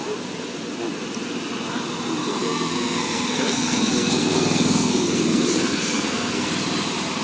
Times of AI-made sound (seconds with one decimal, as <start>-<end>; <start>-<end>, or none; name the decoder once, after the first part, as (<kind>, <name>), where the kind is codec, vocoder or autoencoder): 2.2-6.5 (codec, SNAC)